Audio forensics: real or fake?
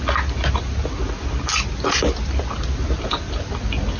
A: real